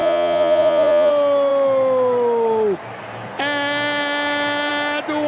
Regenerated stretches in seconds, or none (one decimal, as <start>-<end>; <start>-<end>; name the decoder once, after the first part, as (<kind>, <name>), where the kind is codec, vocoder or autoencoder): 0.0-1.1 (vocoder, Vocos)